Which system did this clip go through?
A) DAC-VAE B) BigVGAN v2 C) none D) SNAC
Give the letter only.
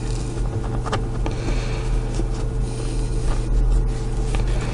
C